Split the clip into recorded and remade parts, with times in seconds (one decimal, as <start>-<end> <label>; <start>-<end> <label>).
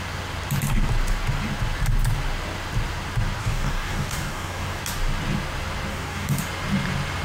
0.0-3.4 recorded; 3.4-4.8 remade; 4.8-5.9 recorded; 5.9-6.4 remade; 6.4-7.2 recorded